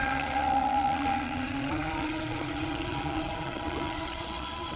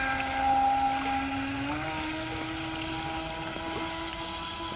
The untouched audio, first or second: second